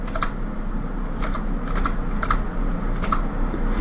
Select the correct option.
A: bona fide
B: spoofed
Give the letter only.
A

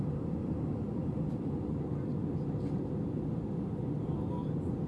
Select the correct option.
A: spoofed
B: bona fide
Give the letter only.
B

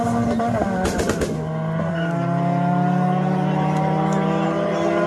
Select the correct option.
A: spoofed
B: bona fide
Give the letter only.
B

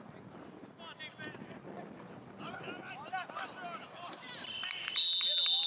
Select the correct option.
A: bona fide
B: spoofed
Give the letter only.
A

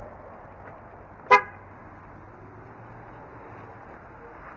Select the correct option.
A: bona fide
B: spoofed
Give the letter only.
A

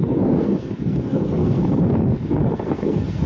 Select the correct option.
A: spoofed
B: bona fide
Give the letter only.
A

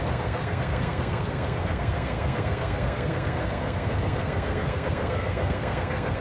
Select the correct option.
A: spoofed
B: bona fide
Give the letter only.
A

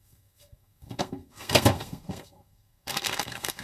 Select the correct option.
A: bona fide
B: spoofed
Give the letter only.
B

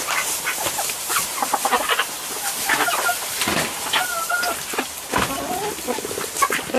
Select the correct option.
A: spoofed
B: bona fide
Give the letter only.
B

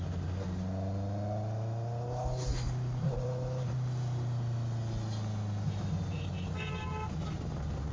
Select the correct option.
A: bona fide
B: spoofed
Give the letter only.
A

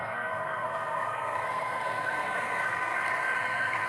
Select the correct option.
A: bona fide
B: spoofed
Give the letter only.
B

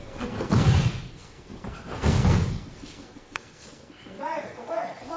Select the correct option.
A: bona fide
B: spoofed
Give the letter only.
B